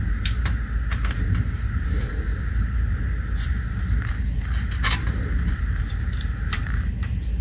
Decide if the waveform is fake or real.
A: fake